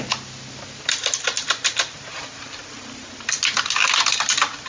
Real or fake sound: real